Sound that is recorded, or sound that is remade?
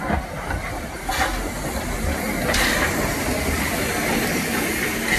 recorded